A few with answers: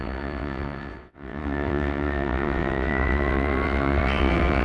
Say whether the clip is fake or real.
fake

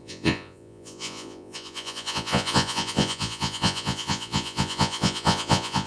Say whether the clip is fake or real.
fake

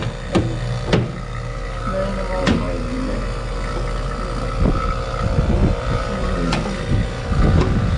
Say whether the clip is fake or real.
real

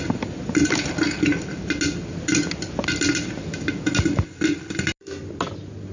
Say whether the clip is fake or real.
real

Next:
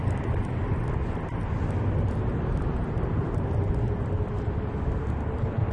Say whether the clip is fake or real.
real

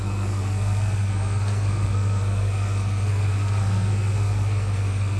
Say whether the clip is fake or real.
fake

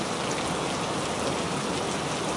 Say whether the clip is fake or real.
real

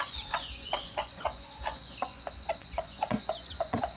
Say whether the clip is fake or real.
fake